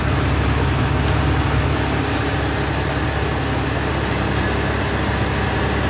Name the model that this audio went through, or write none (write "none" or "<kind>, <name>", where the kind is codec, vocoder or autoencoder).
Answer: none